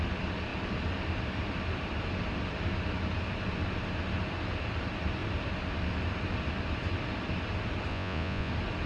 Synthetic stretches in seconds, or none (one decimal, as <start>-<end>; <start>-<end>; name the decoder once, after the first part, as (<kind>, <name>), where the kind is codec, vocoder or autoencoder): 7.9-8.5 (vocoder, Vocos)